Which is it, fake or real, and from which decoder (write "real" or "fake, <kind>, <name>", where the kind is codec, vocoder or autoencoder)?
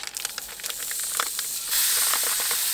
real